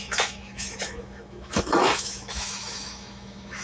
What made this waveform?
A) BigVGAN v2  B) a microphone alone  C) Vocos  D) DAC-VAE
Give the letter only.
D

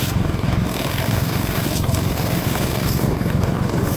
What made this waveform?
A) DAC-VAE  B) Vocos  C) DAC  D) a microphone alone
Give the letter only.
C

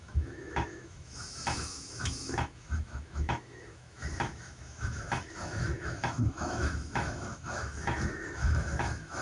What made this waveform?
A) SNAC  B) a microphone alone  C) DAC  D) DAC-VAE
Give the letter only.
D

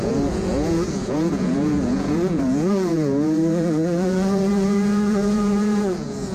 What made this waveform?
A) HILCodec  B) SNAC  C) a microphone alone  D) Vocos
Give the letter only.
D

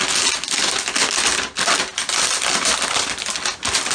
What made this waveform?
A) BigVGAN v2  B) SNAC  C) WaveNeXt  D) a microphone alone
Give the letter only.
D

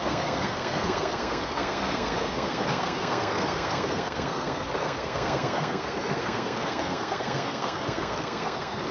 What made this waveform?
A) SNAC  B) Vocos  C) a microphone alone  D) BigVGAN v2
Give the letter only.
A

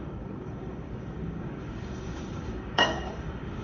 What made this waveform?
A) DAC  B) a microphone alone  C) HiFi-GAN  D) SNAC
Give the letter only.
A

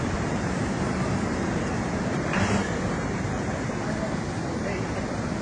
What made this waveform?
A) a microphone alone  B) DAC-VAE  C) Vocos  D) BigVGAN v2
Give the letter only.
D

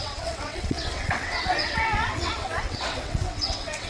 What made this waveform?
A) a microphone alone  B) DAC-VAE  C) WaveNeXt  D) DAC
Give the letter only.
C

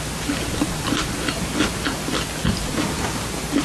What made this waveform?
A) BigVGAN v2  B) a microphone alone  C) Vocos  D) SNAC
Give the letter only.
B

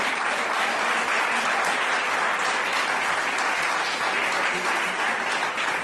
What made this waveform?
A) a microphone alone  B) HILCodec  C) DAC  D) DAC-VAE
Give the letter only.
A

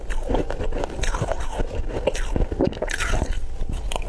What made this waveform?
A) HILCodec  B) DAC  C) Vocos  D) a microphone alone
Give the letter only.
D